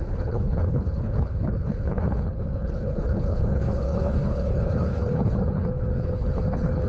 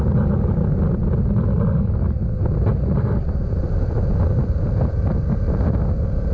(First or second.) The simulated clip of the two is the first